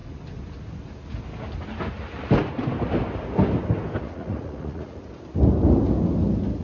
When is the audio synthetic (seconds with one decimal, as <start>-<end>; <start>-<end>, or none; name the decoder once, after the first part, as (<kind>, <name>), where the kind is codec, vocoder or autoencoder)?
4.0-5.0 (vocoder, Vocos)